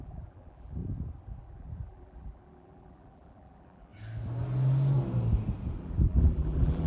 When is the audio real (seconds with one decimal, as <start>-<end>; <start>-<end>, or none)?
0.8-1.4; 3.9-5.8